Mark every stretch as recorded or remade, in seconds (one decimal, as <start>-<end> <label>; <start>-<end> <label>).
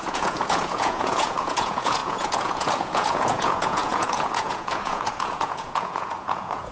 0.0-6.7 remade